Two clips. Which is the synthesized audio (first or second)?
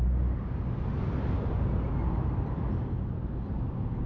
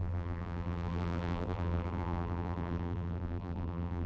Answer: second